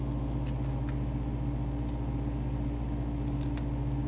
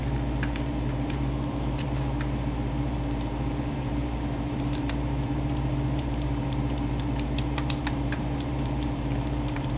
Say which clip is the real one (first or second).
first